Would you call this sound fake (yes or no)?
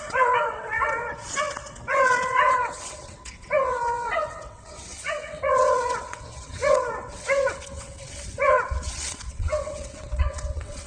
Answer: yes